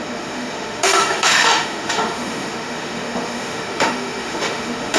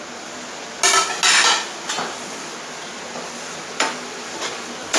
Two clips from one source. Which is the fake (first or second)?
first